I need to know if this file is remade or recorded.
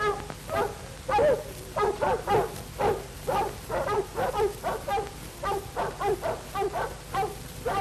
recorded